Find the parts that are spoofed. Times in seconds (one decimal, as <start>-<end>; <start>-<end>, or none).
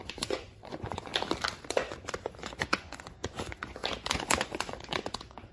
0.0-1.1; 1.6-5.5